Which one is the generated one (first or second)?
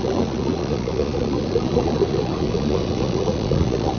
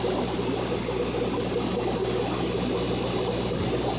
first